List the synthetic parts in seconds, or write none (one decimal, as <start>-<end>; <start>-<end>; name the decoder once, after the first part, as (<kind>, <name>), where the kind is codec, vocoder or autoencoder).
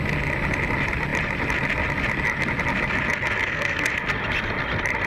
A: 3.4-3.9 (codec, SNAC)